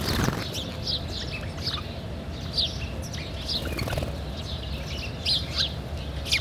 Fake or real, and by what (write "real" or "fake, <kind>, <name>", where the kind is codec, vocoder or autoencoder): real